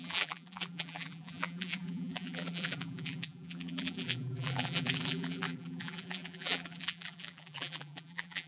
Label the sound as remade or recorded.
remade